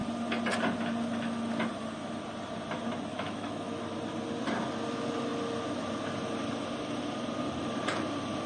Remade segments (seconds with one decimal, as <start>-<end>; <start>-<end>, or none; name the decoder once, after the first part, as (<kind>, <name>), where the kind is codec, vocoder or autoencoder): 3.1-3.8 (autoencoder, DAC-VAE)